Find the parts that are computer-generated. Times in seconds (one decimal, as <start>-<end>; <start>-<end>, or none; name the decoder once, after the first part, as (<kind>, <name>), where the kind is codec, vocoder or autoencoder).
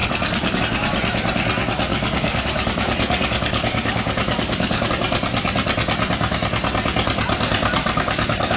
0.0-0.6 (codec, DAC); 1.9-4.9; 7.8-8.6